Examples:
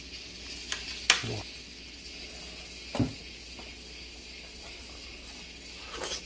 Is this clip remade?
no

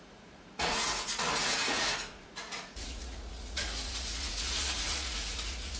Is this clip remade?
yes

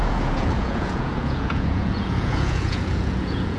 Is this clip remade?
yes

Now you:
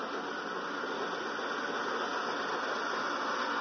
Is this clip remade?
no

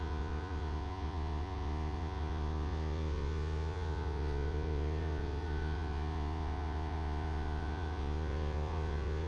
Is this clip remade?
yes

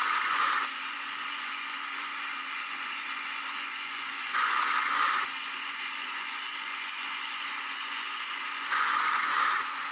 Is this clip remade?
yes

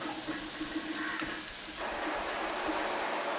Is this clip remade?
no